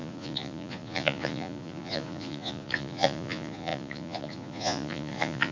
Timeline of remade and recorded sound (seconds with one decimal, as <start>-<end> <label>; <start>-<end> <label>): 0.0-5.5 remade